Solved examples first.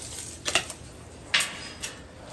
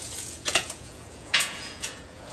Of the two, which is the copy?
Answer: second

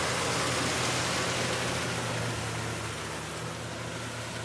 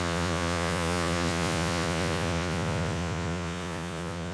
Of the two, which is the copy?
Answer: second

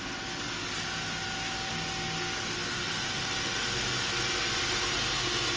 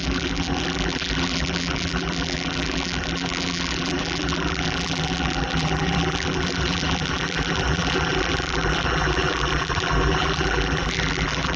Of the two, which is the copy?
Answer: second